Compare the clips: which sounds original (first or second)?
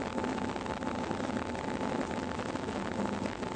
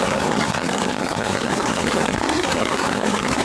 first